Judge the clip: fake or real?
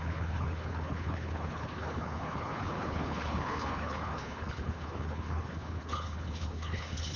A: fake